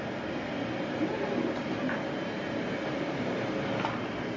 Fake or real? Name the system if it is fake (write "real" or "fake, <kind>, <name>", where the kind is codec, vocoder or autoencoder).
real